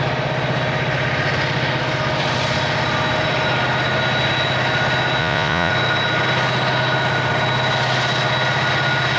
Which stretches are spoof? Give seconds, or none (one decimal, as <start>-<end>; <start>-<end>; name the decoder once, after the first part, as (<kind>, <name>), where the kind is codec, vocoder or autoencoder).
5.2-5.7 (vocoder, Vocos)